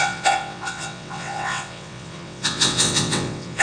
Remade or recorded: remade